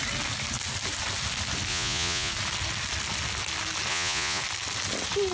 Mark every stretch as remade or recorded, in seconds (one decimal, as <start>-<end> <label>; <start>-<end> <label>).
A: 0.0-1.7 recorded; 1.7-2.3 remade; 2.3-3.9 recorded; 3.9-4.4 remade; 4.4-5.3 recorded

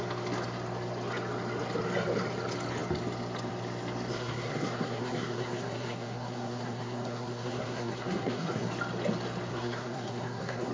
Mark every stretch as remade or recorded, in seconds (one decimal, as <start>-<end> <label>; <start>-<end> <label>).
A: 0.0-4.1 recorded; 4.1-8.7 remade; 8.7-9.5 recorded; 9.5-10.7 remade

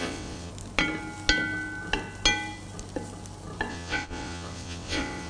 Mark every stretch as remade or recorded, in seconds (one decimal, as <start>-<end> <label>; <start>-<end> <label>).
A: 0.0-0.5 remade; 0.5-3.7 recorded; 3.7-5.3 remade

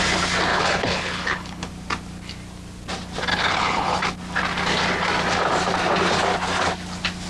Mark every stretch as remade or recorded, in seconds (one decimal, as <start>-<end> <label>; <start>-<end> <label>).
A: 0.0-0.5 recorded; 0.5-1.7 remade; 1.7-3.3 recorded; 3.3-4.0 remade; 4.0-7.3 recorded